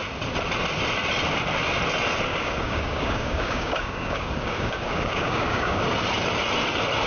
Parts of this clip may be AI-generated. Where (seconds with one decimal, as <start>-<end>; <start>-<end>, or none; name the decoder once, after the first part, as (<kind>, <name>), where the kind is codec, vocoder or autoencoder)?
2.3-5.8 (codec, DAC)